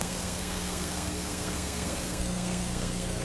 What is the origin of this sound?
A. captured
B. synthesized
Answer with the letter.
B